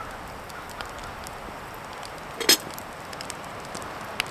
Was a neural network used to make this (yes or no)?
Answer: no